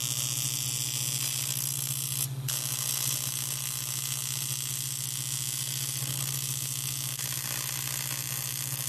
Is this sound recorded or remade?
recorded